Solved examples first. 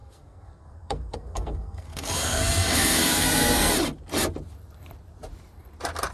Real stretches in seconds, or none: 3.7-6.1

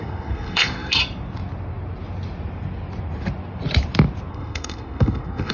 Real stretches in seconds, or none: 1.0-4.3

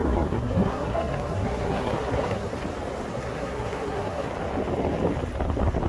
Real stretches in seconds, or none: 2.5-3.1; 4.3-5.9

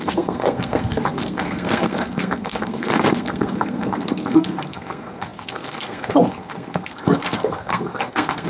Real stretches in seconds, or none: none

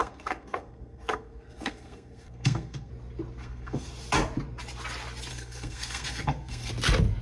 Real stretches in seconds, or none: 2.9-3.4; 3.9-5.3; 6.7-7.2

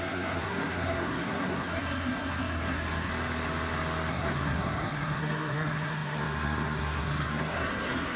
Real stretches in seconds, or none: 3.1-4.1

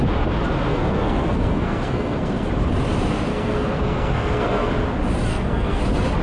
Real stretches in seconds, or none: 0.0-0.7; 2.5-3.3; 4.7-5.3; 5.8-6.2

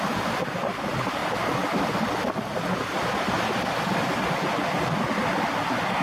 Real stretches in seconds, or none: 0.0-6.0